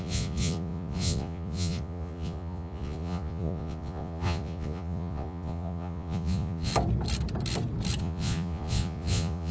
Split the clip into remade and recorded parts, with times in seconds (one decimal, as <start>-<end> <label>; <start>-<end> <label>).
0.0-6.7 remade; 6.7-8.0 recorded; 8.0-9.5 remade